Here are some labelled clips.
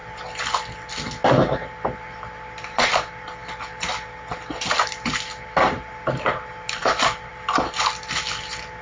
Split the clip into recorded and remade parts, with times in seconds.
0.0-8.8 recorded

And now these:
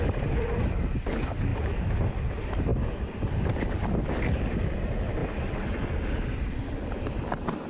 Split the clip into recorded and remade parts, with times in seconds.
0.0-1.5 recorded; 1.5-2.1 remade; 2.1-7.7 recorded